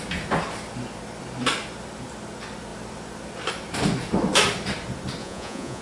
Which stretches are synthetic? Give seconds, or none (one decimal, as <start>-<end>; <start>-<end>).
5.2-5.8